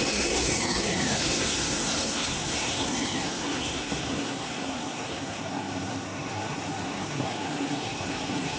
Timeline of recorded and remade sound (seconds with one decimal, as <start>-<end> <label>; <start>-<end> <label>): 0.0-8.6 remade